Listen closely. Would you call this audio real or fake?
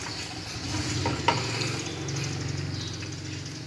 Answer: real